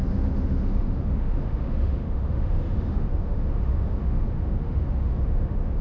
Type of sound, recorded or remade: remade